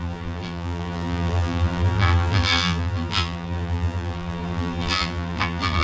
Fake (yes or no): yes